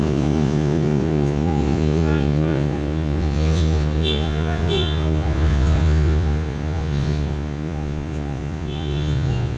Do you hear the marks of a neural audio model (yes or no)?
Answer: yes